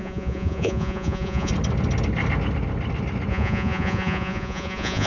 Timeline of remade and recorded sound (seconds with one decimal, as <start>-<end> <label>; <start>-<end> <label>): 0.0-1.5 remade; 1.5-3.3 recorded; 3.3-5.1 remade